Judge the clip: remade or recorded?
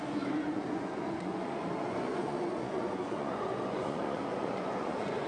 remade